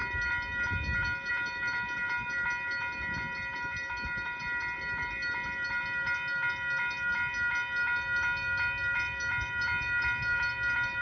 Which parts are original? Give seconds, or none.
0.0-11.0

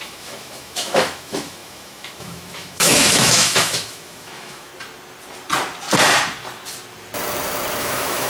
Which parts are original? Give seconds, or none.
4.7-7.8

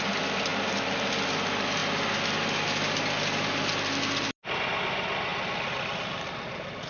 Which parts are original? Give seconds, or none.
0.0-6.9

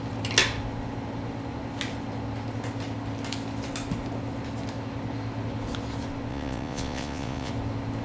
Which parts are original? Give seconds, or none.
0.0-6.3; 7.5-8.0

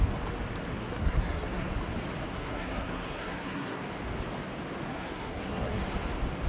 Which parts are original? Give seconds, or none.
0.0-0.7; 1.7-2.3; 3.8-4.9; 5.8-6.5